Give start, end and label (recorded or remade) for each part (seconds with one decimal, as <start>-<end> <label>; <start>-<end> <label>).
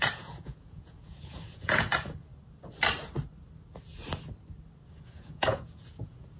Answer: 0.0-2.3 remade; 2.3-4.9 recorded; 4.9-6.4 remade